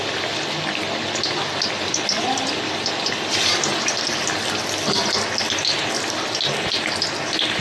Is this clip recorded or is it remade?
recorded